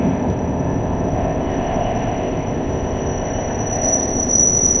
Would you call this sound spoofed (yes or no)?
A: yes